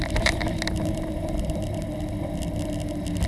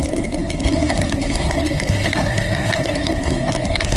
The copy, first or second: second